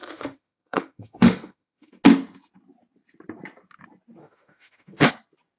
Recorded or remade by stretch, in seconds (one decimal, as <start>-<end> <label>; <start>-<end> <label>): 0.0-1.9 remade; 1.9-4.2 recorded; 4.2-5.1 remade; 5.1-5.6 recorded